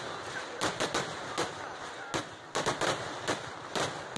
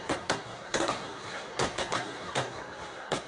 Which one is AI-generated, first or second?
second